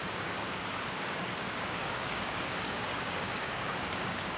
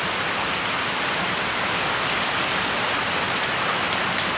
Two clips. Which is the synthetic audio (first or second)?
first